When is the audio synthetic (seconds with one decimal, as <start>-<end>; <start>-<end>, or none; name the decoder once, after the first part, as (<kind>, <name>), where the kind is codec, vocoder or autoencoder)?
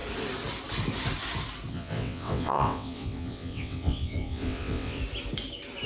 1.7-5.0 (vocoder, WaveNeXt)